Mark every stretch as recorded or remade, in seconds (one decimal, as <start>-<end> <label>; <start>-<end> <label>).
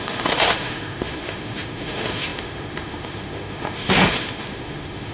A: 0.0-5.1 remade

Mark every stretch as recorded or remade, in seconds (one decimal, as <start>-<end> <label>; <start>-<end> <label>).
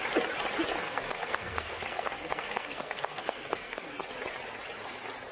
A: 0.0-0.8 recorded; 0.8-4.0 remade; 4.0-5.3 recorded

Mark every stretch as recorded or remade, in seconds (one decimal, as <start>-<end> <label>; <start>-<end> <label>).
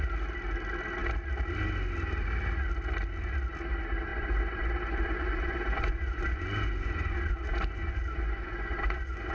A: 0.0-4.1 recorded; 4.1-9.3 remade